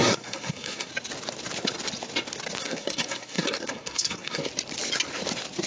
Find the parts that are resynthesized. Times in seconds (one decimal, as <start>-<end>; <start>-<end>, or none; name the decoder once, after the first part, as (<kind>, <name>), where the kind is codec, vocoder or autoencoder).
0.0-0.9 (codec, SNAC); 2.6-4.5